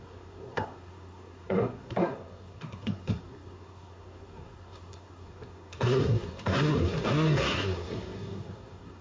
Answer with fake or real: fake